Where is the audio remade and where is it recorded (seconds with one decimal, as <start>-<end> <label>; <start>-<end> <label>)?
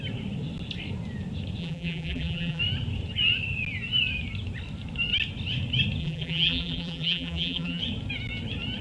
0.0-1.6 recorded; 1.6-2.6 remade; 2.6-6.0 recorded; 6.0-7.8 remade; 7.8-8.8 recorded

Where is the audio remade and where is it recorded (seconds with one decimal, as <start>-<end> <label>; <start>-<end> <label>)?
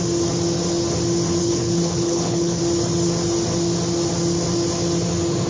0.0-1.4 recorded; 1.4-2.6 remade; 2.6-5.5 recorded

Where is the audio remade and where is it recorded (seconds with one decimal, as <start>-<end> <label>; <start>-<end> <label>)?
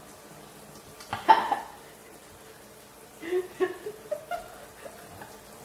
0.0-5.6 recorded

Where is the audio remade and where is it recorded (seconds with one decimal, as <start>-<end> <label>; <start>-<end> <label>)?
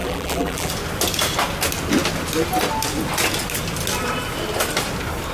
0.0-0.7 remade; 0.7-5.3 recorded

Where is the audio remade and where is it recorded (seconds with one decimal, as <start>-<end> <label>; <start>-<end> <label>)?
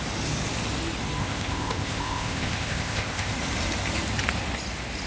0.0-1.2 recorded; 1.2-3.3 remade; 3.3-5.1 recorded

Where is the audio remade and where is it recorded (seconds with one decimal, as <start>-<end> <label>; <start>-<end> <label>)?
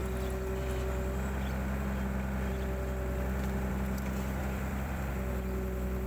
0.0-4.4 recorded; 4.4-5.1 remade; 5.1-6.1 recorded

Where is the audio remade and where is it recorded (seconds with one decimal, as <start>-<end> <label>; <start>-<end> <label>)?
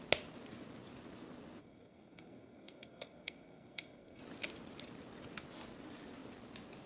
0.0-1.6 recorded; 1.6-4.2 remade; 4.2-6.9 recorded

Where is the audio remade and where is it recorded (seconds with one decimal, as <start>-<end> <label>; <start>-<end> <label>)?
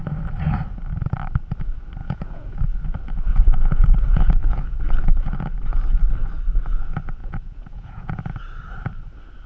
0.0-2.0 recorded; 2.0-2.6 remade; 2.6-3.3 recorded; 3.3-4.9 remade; 4.9-7.2 recorded; 7.2-8.2 remade; 8.2-9.5 recorded